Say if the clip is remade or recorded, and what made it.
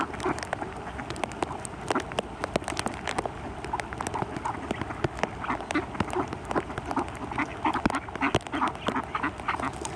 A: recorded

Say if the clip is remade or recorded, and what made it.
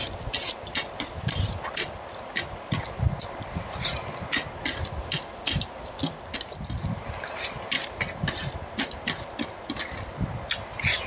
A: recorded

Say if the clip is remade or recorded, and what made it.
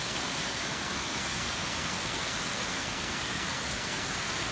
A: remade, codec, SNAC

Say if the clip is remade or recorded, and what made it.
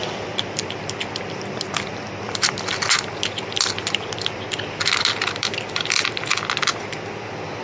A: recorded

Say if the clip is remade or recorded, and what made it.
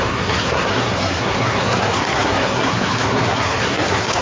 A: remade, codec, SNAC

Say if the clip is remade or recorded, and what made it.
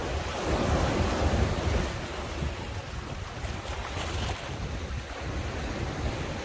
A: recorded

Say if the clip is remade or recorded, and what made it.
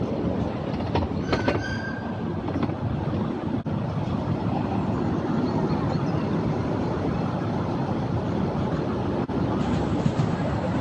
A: recorded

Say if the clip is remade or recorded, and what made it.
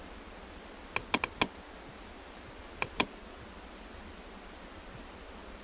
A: recorded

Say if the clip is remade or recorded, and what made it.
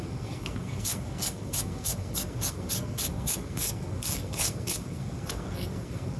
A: remade, codec, SNAC